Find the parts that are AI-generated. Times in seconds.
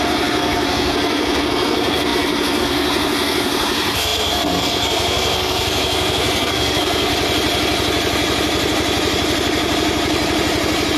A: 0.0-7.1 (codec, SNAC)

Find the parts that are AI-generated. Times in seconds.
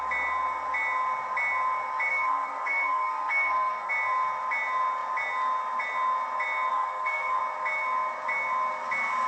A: 2.1-3.9 (codec, SNAC); 6.7-7.4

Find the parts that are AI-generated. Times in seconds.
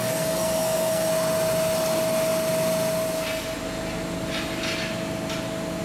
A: 0.0-1.1 (codec, SNAC)